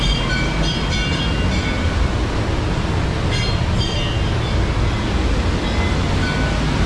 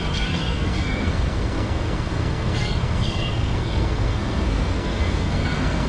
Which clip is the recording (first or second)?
first